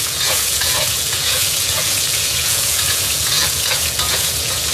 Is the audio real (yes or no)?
no